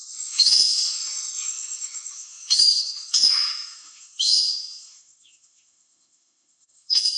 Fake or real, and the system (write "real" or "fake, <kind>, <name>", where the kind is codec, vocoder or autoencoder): fake, autoencoder, DAC-VAE